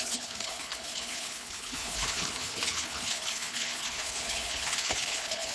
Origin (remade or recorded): remade